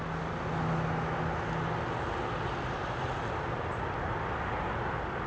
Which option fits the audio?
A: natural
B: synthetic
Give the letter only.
A